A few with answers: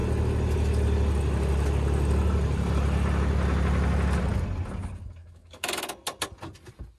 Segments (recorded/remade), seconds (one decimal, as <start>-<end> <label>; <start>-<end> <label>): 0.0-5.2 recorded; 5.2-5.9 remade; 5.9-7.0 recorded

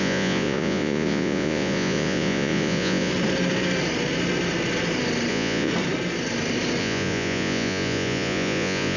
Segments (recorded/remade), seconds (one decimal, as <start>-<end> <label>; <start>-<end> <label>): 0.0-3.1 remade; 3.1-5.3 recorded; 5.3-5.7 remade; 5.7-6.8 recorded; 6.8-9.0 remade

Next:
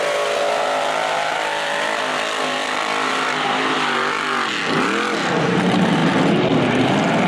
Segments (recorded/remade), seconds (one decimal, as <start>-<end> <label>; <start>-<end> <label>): 0.0-2.6 recorded; 2.6-3.5 remade; 3.5-6.0 recorded; 6.0-6.7 remade; 6.7-7.3 recorded

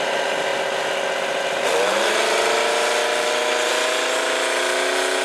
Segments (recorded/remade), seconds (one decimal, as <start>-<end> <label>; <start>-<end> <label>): 0.0-5.2 recorded

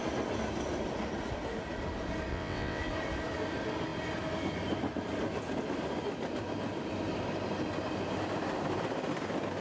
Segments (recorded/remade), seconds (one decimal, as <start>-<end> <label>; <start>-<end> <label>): 0.0-2.3 recorded; 2.3-2.8 remade; 2.8-9.6 recorded

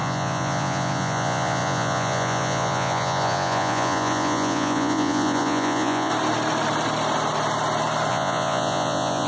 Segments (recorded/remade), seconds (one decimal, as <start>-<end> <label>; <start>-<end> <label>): 0.0-6.1 remade; 6.1-8.1 recorded; 8.1-9.3 remade